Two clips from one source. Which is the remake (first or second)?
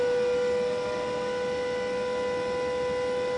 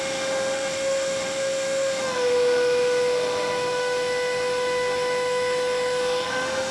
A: second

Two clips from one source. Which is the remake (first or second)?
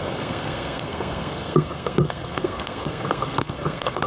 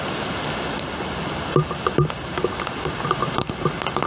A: first